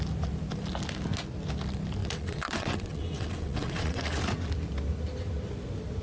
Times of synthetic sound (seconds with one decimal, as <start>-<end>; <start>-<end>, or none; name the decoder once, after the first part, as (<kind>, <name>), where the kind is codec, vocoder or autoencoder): 2.0-4.2 (vocoder, WaveNeXt)